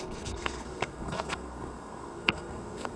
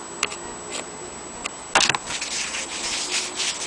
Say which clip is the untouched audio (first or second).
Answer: second